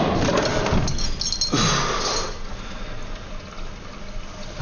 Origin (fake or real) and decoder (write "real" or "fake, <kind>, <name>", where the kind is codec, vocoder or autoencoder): real